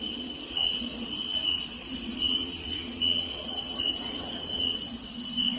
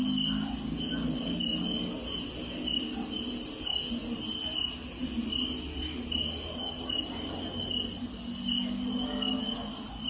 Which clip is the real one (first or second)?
second